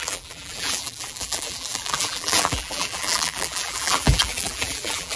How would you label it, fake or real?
fake